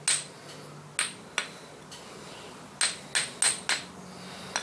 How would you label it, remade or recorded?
recorded